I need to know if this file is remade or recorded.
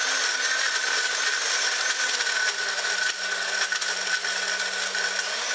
recorded